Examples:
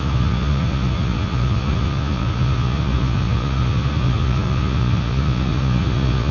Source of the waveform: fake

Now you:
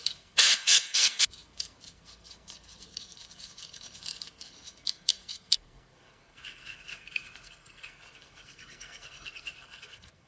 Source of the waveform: fake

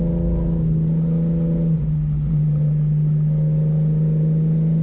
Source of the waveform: real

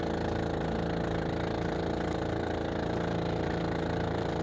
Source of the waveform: real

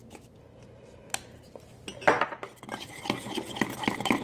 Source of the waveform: real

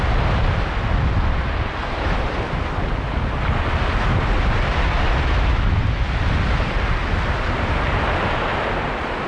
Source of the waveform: real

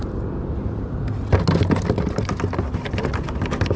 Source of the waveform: real